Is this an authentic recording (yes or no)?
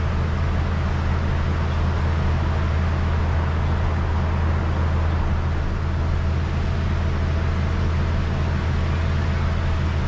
yes